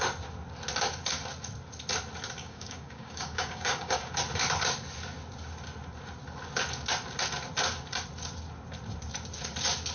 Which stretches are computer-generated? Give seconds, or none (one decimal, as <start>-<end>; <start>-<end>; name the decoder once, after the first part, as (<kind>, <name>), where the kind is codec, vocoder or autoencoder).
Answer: 2.4-4.1 (codec, DAC)